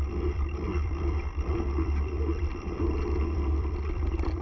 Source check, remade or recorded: remade